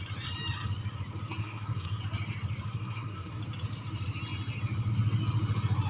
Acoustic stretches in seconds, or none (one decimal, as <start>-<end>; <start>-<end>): 0.0-1.4; 2.0-2.7; 3.4-5.9